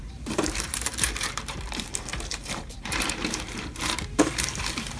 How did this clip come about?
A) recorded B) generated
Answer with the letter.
B